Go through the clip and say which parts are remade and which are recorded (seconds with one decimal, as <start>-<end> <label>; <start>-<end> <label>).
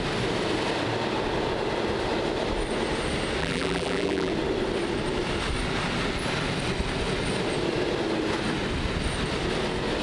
0.0-3.4 recorded; 3.4-4.3 remade; 4.3-10.0 recorded